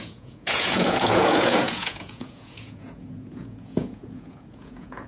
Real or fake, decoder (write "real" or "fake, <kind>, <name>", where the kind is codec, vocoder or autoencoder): fake, vocoder, Vocos